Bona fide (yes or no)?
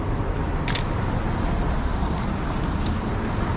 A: yes